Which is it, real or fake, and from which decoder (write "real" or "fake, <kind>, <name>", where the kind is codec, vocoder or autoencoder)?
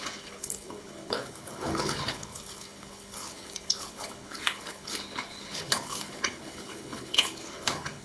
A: fake, codec, HILCodec